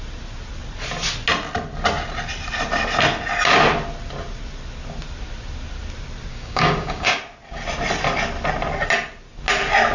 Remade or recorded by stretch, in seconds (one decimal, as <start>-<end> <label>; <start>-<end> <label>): 0.0-6.3 recorded; 6.3-7.2 remade; 7.2-9.9 recorded